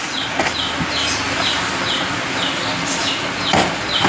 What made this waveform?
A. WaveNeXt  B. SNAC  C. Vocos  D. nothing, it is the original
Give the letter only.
D